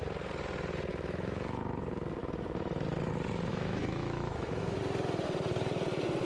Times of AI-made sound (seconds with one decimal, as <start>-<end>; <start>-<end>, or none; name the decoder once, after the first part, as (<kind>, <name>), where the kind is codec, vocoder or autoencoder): 0.9-1.6 (autoencoder, DAC-VAE); 3.5-4.8